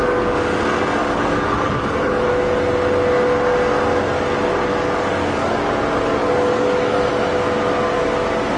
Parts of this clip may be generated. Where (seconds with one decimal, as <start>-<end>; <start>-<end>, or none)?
0.0-0.6; 1.0-2.3; 4.7-5.6; 6.2-7.1